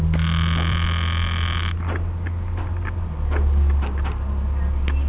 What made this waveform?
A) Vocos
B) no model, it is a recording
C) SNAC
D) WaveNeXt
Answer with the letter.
B